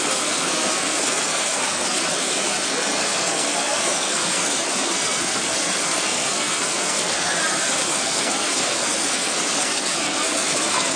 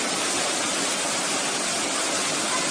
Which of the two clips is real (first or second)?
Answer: second